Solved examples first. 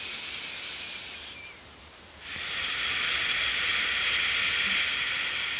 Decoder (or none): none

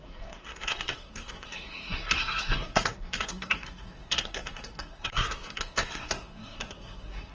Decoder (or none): codec, SNAC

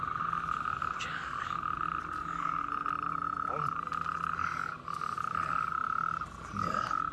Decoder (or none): none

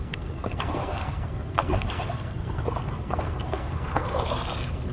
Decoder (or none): codec, SNAC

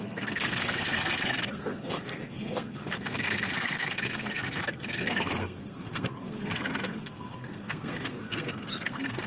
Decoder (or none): codec, SNAC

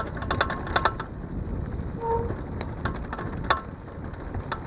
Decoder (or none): none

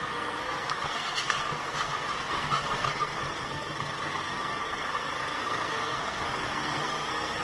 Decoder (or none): codec, SNAC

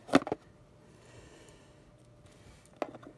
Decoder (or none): none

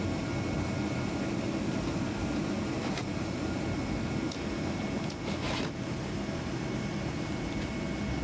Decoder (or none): none